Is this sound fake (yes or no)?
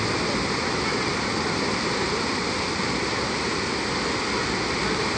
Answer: no